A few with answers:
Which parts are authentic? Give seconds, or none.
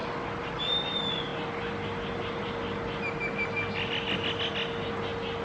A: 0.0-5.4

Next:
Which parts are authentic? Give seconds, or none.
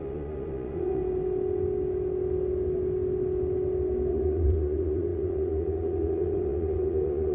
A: 1.0-4.1